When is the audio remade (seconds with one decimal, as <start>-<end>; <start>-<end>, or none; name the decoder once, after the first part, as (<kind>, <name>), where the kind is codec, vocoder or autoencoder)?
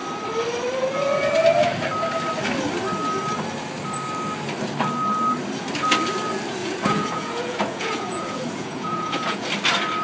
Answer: 6.6-9.5 (vocoder, Vocos)